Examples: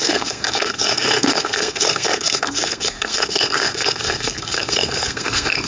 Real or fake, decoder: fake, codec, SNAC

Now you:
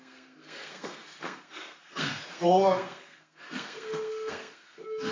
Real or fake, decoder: fake, codec, SNAC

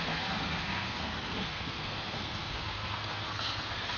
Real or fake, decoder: fake, codec, SNAC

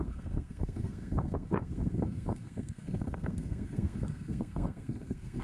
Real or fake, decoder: fake, codec, SNAC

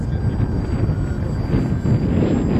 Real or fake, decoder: real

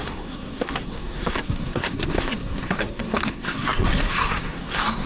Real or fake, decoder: fake, codec, SNAC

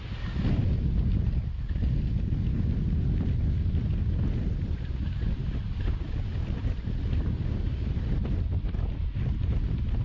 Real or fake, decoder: real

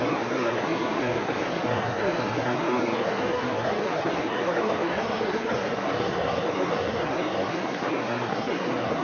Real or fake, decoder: fake, codec, SNAC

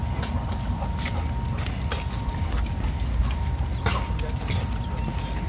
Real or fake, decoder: real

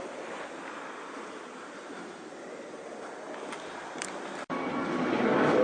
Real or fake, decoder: real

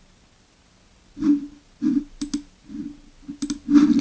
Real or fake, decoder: real